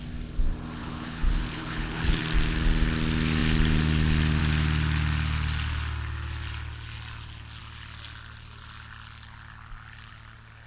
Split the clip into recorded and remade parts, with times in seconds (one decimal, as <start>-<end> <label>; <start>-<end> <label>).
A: 0.0-0.8 recorded; 0.8-2.2 remade; 2.2-10.7 recorded